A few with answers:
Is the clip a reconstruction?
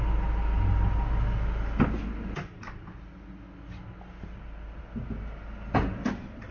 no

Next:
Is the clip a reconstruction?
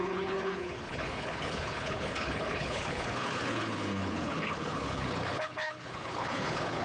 yes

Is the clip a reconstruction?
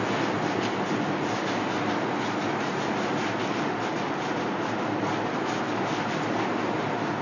no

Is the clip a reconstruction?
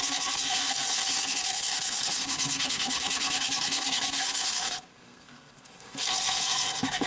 yes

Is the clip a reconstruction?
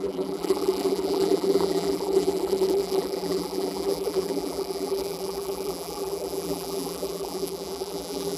yes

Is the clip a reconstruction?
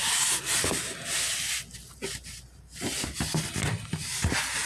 no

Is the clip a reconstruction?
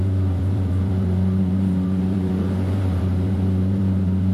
yes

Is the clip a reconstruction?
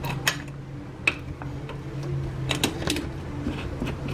no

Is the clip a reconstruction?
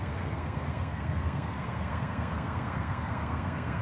yes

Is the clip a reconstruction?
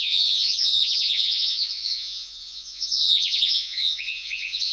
yes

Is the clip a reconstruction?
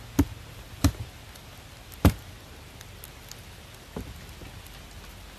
no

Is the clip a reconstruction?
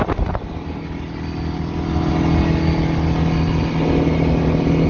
no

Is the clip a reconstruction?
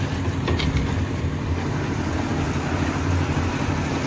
no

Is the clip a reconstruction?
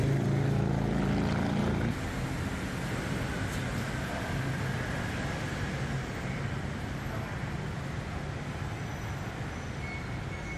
no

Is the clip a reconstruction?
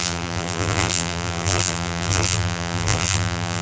yes